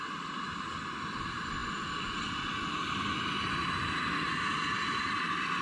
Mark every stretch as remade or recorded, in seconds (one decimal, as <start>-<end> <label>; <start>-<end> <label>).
0.0-5.6 recorded